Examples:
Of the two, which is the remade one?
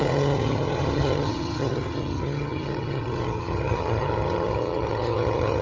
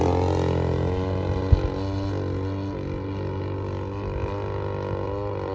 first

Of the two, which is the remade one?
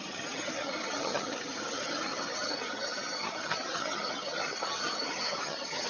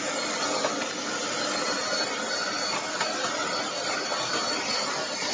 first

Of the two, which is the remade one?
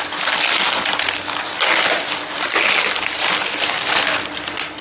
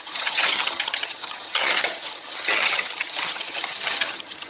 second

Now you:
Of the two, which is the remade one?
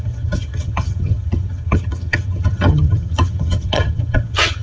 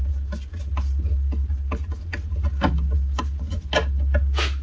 first